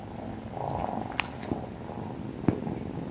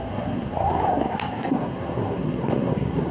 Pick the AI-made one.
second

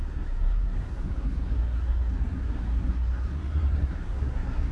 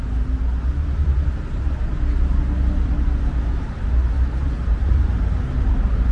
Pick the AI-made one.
first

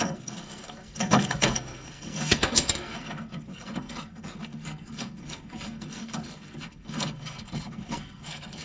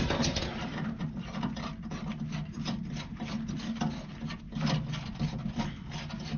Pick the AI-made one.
first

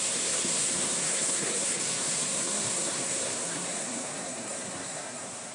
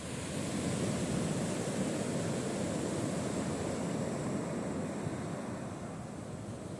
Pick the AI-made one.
first